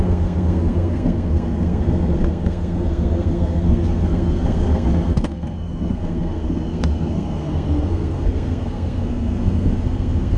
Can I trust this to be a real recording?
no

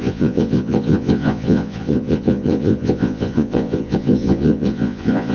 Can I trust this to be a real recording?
no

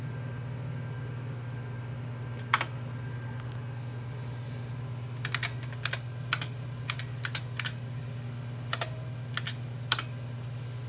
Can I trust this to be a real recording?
yes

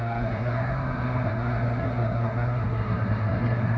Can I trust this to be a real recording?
no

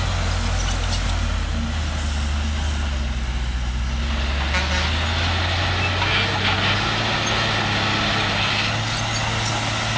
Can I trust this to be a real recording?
yes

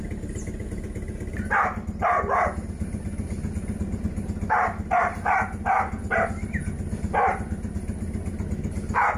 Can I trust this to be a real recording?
yes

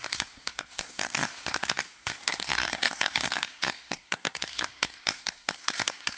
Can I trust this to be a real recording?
no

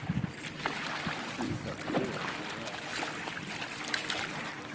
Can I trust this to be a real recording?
yes